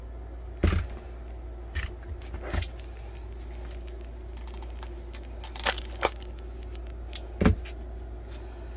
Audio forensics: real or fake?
real